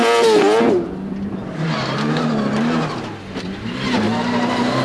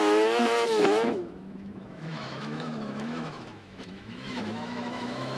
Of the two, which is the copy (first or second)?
second